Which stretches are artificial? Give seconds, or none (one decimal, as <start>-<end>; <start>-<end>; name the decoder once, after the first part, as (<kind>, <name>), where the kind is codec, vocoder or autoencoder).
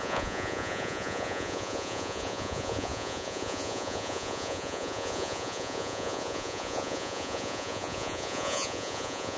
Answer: 0.0-9.4 (vocoder, Vocos)